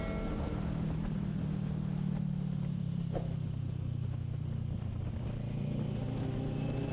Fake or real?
real